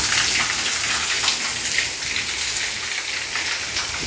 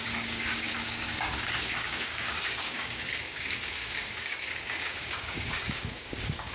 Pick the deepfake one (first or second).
second